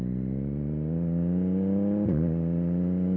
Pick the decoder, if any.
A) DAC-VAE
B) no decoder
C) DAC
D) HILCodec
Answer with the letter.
B